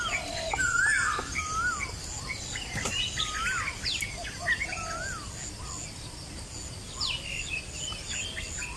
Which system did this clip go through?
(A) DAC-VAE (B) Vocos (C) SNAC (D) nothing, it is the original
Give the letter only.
D